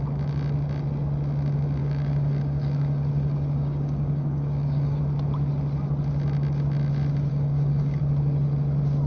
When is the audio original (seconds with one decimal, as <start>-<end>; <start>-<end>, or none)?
0.0-1.8; 5.0-7.3; 8.0-9.1